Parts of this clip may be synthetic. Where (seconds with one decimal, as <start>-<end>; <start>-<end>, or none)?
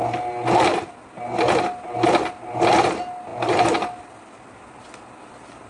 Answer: none